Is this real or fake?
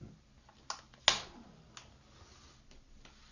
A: real